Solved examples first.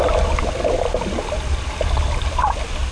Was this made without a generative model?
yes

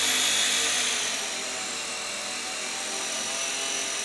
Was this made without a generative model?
yes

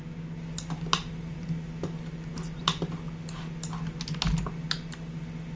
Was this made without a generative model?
yes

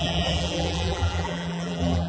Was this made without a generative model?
no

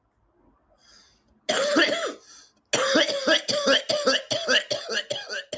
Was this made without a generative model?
yes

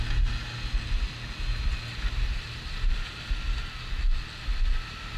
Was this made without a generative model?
yes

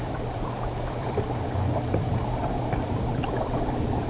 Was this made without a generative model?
no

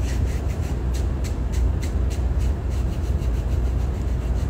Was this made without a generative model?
no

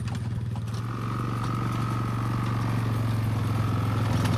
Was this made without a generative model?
yes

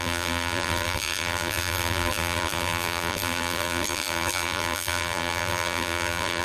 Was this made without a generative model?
no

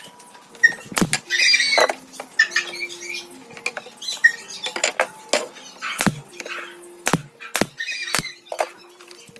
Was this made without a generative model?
yes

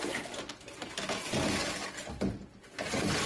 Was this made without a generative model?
yes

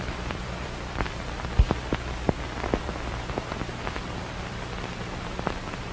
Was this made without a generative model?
no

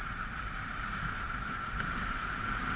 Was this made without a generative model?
no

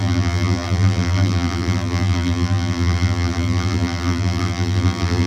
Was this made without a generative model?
no